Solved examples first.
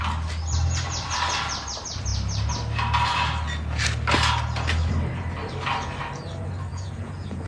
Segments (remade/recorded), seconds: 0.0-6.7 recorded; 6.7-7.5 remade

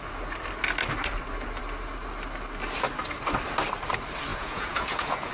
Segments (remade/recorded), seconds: 0.0-4.3 recorded; 4.3-5.3 remade

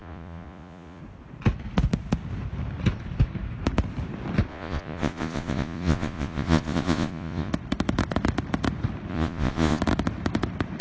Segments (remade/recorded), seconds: 0.0-1.0 remade; 1.0-4.5 recorded; 4.5-7.5 remade; 7.5-9.1 recorded; 9.1-9.8 remade; 9.8-10.8 recorded

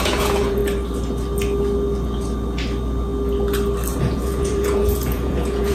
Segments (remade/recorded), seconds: 0.0-0.6 remade; 0.6-4.0 recorded; 4.0-5.7 remade

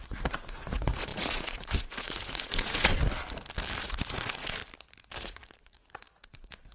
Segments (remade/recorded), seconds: 0.0-2.9 remade; 2.9-3.8 recorded; 3.8-4.6 remade; 4.6-5.2 recorded; 5.2-6.7 remade

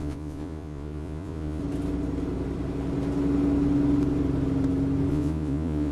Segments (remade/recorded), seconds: 0.0-1.6 remade; 1.6-5.1 recorded; 5.1-5.9 remade

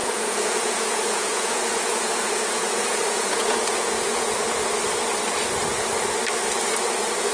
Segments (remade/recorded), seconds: 0.0-4.4 remade; 4.4-7.3 recorded